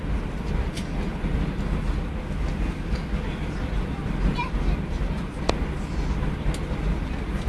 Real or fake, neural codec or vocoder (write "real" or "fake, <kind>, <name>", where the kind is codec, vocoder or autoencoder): real